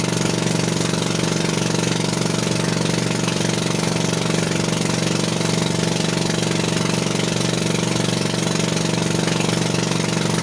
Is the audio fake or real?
real